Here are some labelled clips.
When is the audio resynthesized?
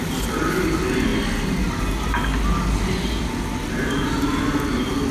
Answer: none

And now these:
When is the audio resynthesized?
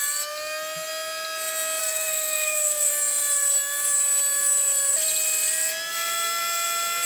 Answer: 1.8-2.9 (codec, SNAC)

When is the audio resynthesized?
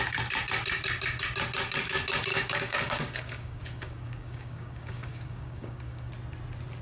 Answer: 2.3-6.1 (codec, DAC)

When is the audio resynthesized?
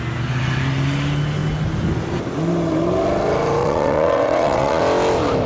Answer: 3.6-4.8 (vocoder, WaveNeXt)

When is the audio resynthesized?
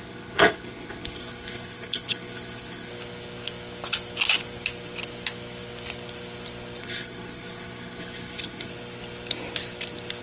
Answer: 0.0-2.9 (codec, HILCodec); 6.8-8.7